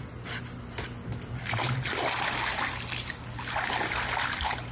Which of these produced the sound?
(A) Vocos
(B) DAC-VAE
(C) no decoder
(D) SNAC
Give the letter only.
C